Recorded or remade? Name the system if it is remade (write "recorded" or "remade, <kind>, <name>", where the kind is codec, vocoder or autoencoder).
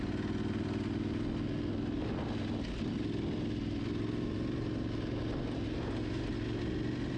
recorded